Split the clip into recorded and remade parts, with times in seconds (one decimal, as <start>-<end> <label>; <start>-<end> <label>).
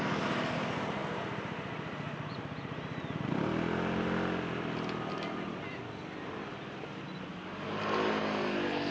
0.0-8.9 recorded